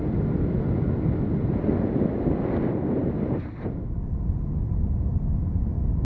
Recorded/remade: recorded